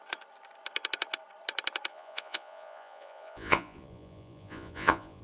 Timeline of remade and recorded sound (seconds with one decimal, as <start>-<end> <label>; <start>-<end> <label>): 0.0-1.9 recorded; 1.9-5.2 remade

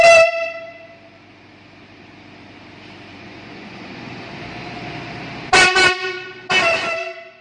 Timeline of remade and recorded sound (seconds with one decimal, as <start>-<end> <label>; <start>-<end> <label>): 0.0-3.1 recorded; 3.1-4.4 remade; 4.4-7.4 recorded